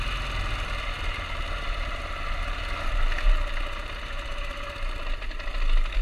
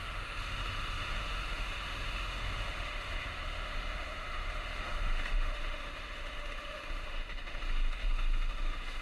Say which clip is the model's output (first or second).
second